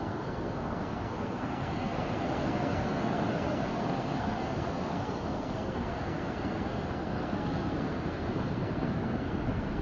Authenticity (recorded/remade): remade